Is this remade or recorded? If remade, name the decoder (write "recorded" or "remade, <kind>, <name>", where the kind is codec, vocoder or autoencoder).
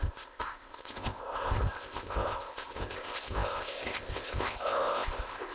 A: remade, codec, ZipCodec